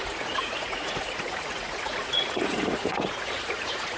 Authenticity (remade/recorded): remade